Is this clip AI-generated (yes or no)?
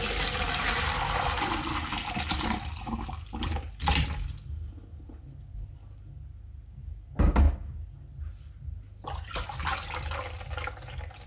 no